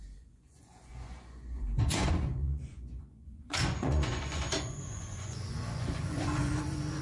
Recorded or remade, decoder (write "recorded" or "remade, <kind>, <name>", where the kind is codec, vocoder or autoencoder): remade, vocoder, Vocos